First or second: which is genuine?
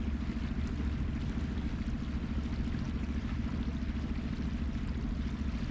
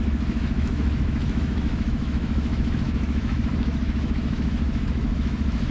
first